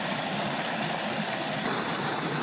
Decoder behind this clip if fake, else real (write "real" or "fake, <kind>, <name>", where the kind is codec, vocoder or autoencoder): real